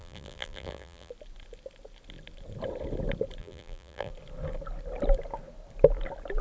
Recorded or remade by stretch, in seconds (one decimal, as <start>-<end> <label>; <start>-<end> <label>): 0.0-1.1 remade; 1.1-3.4 recorded; 3.4-4.1 remade; 4.1-6.4 recorded